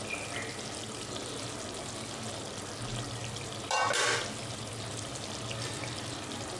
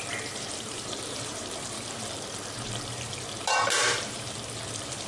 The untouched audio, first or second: first